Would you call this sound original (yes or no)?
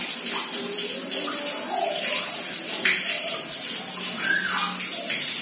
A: yes